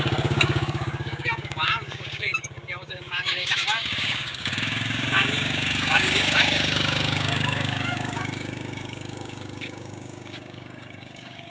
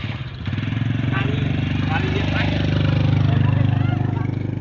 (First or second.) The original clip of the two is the second